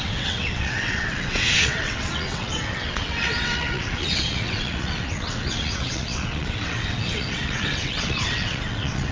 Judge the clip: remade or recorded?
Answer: remade